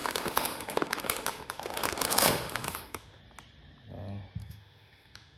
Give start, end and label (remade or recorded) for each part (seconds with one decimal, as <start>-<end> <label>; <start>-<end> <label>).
0.0-3.2 remade; 3.2-4.4 recorded; 4.4-5.4 remade